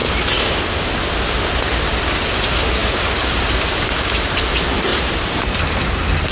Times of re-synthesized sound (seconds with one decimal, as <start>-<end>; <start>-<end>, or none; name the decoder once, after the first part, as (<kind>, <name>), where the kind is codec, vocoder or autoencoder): 2.8-4.4 (vocoder, BigVGAN v2); 4.9-5.6